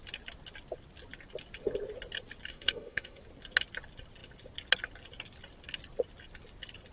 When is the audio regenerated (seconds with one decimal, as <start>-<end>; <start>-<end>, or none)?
2.5-3.2

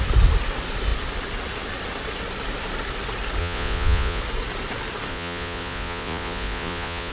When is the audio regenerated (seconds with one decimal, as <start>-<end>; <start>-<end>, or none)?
3.4-4.2; 5.1-7.1

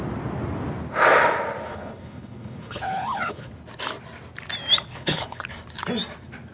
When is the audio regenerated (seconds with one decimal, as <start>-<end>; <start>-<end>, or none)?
1.7-3.5; 4.9-5.4